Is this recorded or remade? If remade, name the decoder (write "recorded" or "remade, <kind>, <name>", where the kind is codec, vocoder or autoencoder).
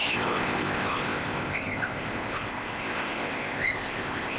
remade, codec, ZipCodec